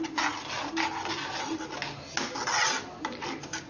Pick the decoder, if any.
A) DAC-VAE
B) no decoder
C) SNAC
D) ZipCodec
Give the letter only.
B